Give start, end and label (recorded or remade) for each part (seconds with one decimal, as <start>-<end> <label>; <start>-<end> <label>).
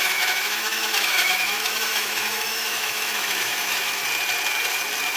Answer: 0.0-4.0 remade; 4.0-5.2 recorded